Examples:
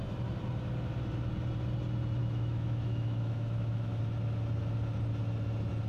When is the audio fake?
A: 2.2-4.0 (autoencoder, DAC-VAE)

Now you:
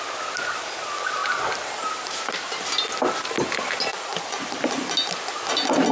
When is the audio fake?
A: none

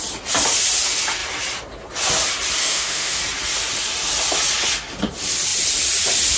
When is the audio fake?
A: 2.6-3.2 (autoencoder, DAC-VAE)